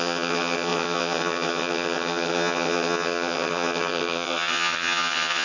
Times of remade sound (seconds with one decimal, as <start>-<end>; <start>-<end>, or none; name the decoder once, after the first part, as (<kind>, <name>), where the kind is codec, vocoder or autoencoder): 0.0-5.4 (vocoder, HiFi-GAN)

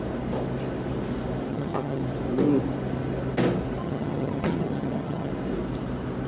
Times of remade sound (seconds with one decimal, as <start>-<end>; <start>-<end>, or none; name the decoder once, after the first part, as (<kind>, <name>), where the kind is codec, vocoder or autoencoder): 1.5-2.0 (vocoder, HiFi-GAN); 3.8-5.3

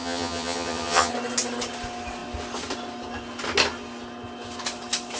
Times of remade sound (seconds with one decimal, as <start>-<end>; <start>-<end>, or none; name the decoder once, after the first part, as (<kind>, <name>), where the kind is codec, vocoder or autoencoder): 0.0-1.1 (vocoder, HiFi-GAN)

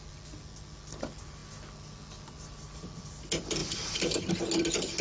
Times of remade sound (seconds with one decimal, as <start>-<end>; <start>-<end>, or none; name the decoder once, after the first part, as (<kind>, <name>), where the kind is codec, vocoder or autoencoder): none